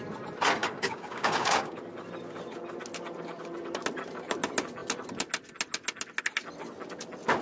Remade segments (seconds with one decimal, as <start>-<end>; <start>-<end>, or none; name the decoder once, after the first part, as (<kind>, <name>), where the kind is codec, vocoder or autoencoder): 0.6-1.8 (codec, DAC)